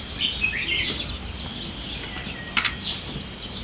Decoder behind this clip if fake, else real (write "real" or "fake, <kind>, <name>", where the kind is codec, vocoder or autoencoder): real